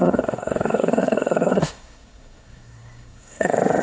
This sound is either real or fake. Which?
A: fake